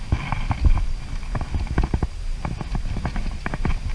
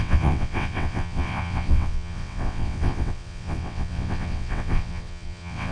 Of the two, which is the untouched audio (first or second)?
first